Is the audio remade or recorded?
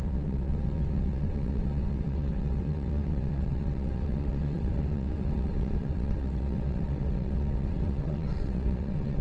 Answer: remade